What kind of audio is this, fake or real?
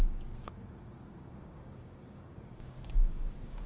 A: fake